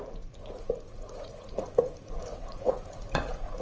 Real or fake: fake